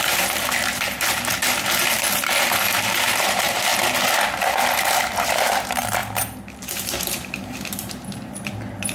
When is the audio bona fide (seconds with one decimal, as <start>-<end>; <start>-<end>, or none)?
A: 1.3-1.8; 3.7-5.1